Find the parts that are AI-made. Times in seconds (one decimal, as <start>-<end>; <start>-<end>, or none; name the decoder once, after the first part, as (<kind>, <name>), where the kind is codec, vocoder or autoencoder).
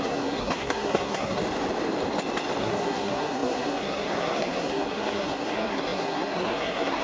0.0-1.4 (codec, SNAC); 2.6-7.0